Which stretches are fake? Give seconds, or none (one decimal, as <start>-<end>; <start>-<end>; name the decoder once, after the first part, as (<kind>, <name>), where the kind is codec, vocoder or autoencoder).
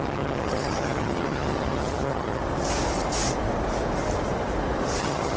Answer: 0.0-2.4 (vocoder, HiFi-GAN); 5.0-5.4